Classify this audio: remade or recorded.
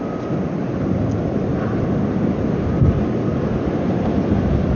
recorded